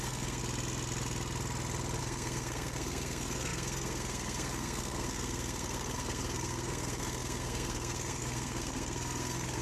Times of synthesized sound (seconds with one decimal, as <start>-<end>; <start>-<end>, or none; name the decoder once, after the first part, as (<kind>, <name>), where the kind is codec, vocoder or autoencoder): 0.0-0.4 (codec, SNAC); 2.0-9.6